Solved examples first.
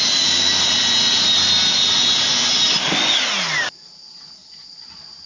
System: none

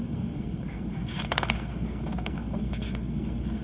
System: codec, SNAC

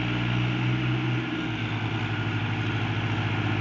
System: none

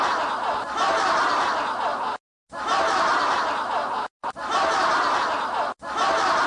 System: none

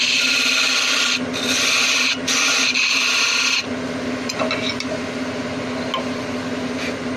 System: none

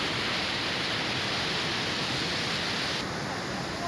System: none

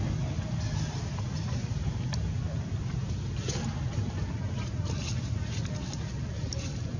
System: none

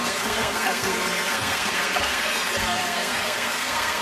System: codec, SNAC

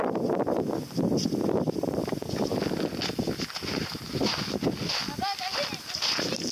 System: none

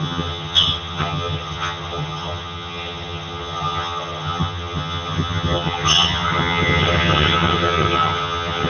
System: vocoder, HiFi-GAN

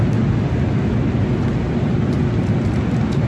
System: none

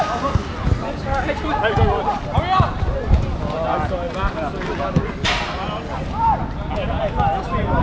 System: none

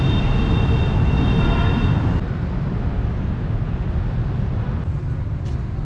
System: none